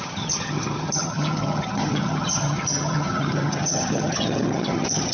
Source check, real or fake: fake